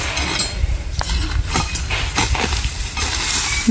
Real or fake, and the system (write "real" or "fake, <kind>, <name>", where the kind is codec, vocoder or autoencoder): real